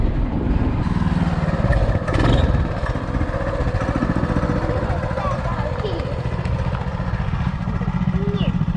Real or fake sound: real